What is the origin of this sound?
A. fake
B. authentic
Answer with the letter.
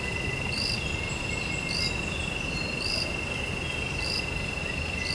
B